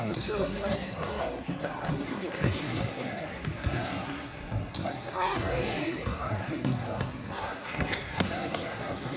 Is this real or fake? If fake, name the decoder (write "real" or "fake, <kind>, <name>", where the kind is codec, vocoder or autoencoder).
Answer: fake, codec, SNAC